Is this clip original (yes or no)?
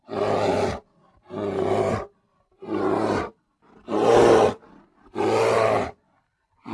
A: yes